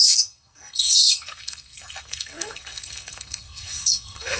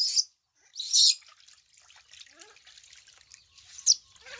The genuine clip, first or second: second